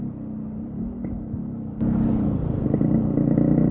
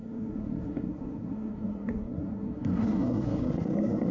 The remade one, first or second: second